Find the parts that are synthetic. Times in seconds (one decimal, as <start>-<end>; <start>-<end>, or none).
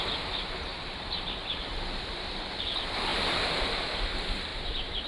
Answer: 0.7-2.6; 3.1-3.7